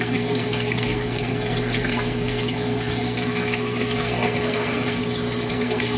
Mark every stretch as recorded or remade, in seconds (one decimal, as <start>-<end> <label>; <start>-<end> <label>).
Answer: 0.0-5.0 remade; 5.0-5.5 recorded; 5.5-6.0 remade